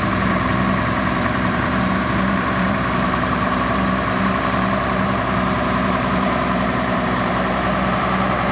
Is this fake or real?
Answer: fake